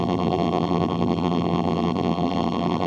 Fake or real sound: fake